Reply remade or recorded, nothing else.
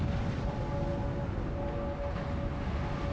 recorded